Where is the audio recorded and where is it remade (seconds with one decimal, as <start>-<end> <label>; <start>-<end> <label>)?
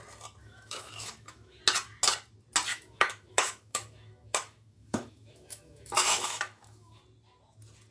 0.0-0.4 recorded; 0.4-1.6 remade; 1.6-2.7 recorded; 2.7-7.0 remade; 7.0-7.9 recorded